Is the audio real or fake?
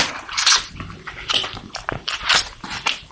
fake